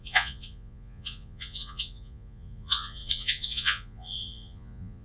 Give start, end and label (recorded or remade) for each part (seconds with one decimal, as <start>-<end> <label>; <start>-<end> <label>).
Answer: 0.0-5.0 remade